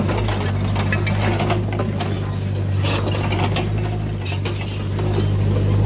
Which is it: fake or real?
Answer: real